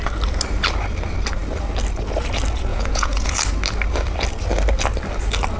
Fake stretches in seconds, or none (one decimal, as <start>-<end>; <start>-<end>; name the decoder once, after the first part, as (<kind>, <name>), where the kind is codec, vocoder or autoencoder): 2.7-3.3 (vocoder, Vocos)